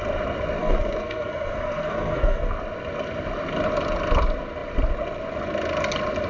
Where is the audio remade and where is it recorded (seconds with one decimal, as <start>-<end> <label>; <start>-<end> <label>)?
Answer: 0.0-0.6 recorded; 0.6-2.5 remade; 2.5-6.3 recorded